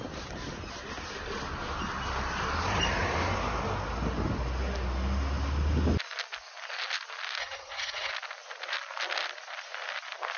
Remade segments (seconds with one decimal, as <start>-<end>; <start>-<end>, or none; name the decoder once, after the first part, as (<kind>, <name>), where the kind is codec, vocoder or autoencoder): 7.4-8.1 (vocoder, HiFi-GAN)

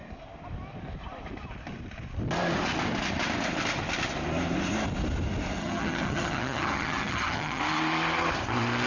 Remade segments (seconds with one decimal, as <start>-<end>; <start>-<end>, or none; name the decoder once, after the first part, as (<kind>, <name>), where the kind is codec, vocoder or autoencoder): 5.6-7.6 (vocoder, HiFi-GAN)

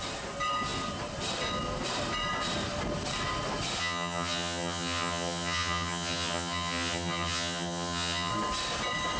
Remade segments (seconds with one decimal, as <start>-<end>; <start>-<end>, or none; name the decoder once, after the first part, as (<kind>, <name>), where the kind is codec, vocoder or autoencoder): 3.8-8.3 (vocoder, HiFi-GAN)

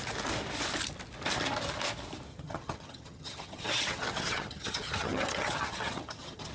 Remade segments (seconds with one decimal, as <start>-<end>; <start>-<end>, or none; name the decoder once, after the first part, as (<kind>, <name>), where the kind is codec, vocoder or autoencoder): 2.3-6.5 (vocoder, HiFi-GAN)

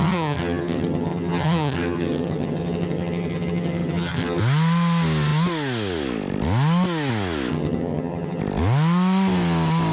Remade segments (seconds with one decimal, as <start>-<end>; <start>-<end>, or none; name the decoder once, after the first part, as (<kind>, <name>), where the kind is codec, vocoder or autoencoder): 0.0-4.4 (vocoder, HiFi-GAN); 7.5-8.4

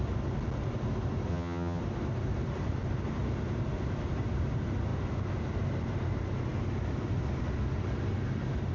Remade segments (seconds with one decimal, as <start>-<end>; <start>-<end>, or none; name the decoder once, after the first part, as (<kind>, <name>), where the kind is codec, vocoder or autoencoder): 1.3-1.8 (vocoder, HiFi-GAN)

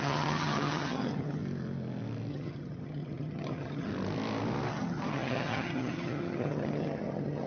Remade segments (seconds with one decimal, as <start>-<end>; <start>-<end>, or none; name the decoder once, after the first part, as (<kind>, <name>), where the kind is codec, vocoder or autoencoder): 0.0-1.4 (vocoder, HiFi-GAN); 2.3-3.9; 4.7-7.5